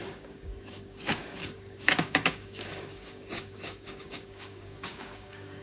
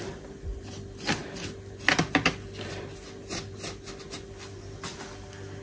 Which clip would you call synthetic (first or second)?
first